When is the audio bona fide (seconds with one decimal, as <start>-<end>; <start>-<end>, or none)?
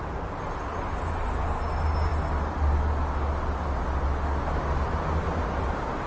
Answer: 0.0-6.1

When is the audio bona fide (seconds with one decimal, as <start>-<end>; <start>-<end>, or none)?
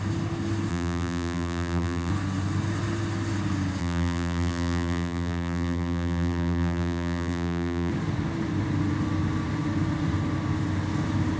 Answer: 0.0-0.7; 2.1-3.8; 7.9-11.4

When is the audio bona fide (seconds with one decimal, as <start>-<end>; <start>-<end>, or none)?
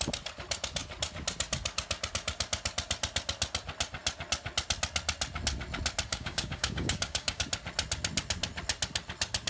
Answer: 0.0-6.1; 7.4-9.5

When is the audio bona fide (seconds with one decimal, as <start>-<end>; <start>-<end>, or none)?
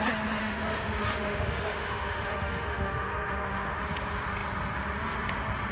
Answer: 0.0-0.4; 3.8-5.7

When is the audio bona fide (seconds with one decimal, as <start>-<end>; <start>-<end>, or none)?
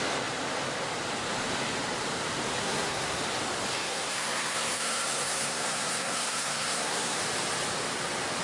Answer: 0.0-2.6; 3.2-3.8; 7.2-8.4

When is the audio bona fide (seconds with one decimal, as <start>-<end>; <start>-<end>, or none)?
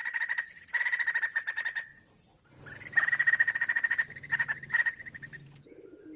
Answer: 0.0-6.2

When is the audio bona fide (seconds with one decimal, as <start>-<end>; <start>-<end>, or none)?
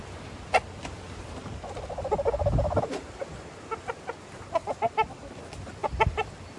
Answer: 0.0-5.8